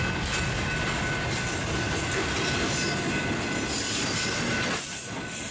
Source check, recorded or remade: recorded